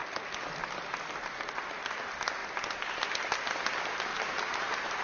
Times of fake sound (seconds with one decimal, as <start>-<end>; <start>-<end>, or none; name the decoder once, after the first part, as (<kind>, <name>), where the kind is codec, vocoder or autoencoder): 4.1-5.0 (vocoder, BigVGAN v2)